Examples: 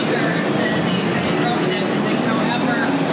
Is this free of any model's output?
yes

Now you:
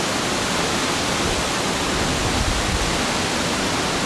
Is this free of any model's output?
yes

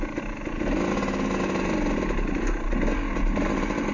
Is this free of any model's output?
yes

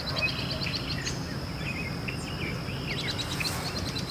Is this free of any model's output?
yes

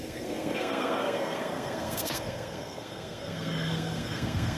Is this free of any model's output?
no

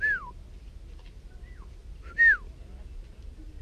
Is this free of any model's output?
yes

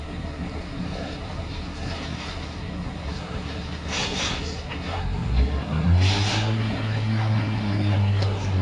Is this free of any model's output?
no